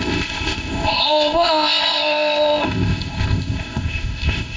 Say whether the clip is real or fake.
fake